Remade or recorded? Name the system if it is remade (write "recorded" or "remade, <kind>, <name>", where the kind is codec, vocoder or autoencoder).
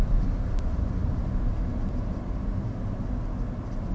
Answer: recorded